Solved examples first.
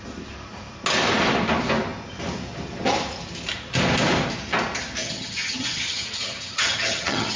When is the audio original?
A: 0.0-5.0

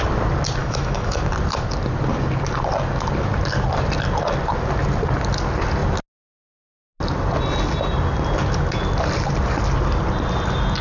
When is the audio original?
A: 0.0-0.6; 1.2-10.8

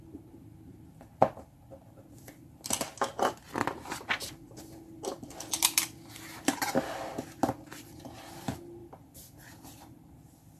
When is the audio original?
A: 0.0-8.8

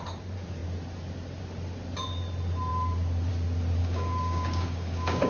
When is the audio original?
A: 0.0-3.8